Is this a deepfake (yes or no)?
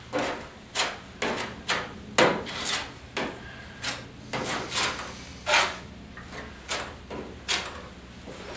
no